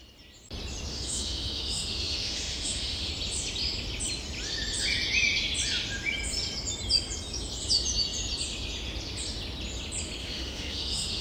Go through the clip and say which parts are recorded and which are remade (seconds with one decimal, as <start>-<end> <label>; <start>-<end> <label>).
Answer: 0.0-0.9 recorded; 0.9-3.1 remade; 3.1-10.2 recorded; 10.2-11.2 remade